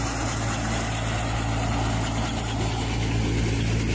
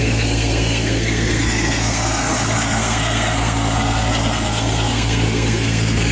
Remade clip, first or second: second